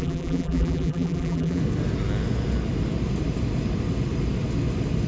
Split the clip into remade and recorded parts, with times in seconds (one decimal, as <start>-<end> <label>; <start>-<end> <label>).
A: 0.0-1.6 remade; 1.6-5.1 recorded